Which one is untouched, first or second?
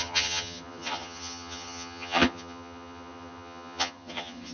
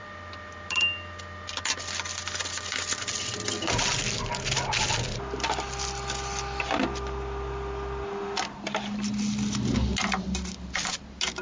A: second